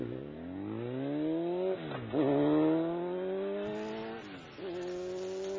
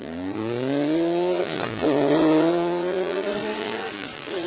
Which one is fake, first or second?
second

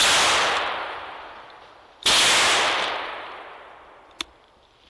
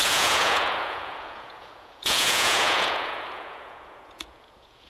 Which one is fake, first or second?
second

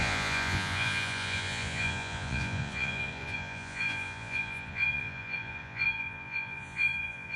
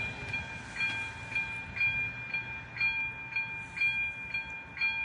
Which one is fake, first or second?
first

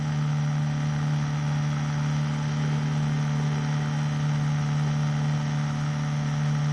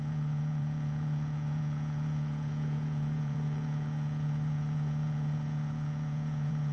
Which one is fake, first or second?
second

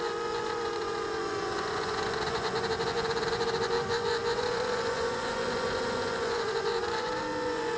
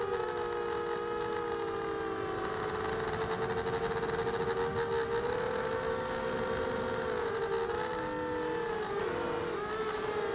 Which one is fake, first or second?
first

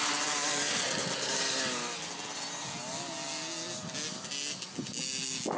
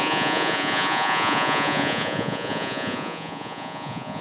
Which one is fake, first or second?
second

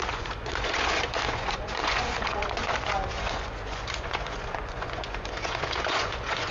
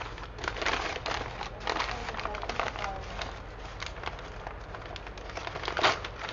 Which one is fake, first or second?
first